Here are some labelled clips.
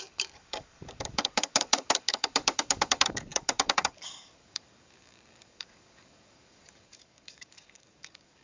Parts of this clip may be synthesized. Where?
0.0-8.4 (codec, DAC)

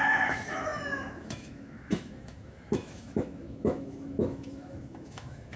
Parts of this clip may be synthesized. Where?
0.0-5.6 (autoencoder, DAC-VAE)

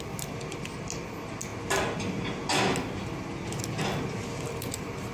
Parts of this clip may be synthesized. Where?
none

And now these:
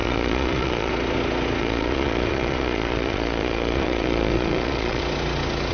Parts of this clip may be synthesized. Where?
0.0-0.9 (vocoder, Vocos); 1.6-5.0

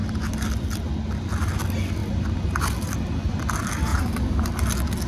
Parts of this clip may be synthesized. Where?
2.0-2.6 (vocoder, BigVGAN v2); 3.9-4.6

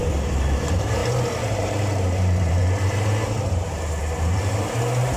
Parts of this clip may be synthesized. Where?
0.0-1.0 (vocoder, BigVGAN v2); 1.6-5.2

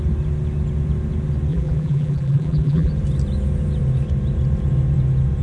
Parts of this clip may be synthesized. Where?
1.5-2.9 (vocoder, BigVGAN v2)

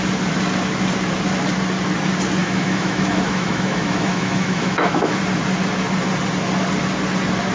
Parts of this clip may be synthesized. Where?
2.4-5.2 (autoencoder, DAC-VAE)